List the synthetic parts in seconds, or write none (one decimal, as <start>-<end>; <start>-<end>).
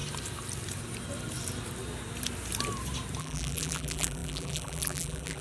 3.2-5.4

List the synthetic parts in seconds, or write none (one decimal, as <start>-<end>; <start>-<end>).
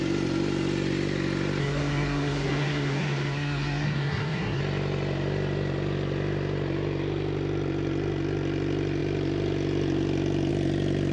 1.6-4.6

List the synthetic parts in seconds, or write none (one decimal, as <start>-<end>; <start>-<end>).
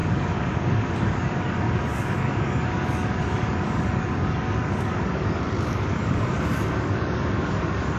0.0-8.0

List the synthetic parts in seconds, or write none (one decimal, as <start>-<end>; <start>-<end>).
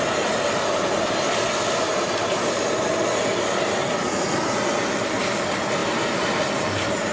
5.8-7.1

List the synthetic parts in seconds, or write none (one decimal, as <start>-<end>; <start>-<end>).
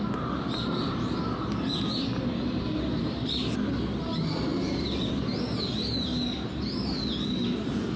none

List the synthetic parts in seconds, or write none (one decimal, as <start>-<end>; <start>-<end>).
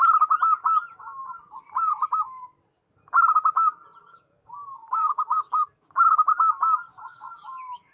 4.0-6.5; 6.9-7.9